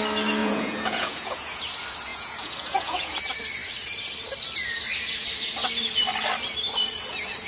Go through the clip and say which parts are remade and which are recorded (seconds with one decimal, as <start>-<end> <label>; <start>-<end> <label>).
0.0-0.4 recorded; 0.4-1.6 remade; 1.6-2.1 recorded; 2.1-3.2 remade; 3.2-7.5 recorded